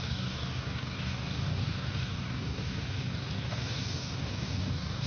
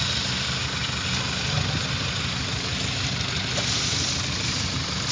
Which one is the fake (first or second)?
first